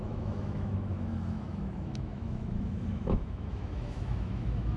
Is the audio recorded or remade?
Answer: remade